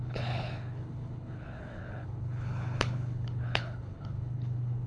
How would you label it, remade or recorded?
remade